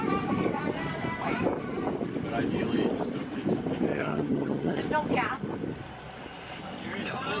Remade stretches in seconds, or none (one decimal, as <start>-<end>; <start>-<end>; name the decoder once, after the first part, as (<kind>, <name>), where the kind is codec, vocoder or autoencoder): 3.9-4.8 (vocoder, HiFi-GAN)